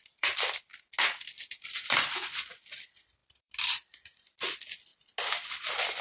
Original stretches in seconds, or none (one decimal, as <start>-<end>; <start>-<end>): 0.7-1.2; 4.9-6.0